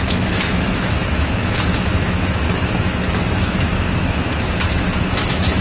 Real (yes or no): no